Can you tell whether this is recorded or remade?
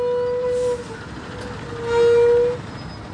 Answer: recorded